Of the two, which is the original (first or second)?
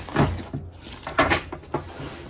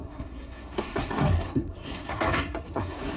first